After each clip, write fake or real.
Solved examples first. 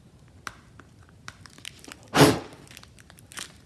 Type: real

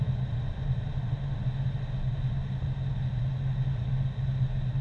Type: real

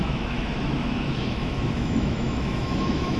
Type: fake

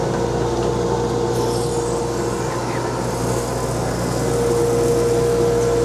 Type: real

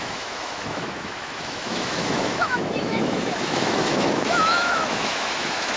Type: fake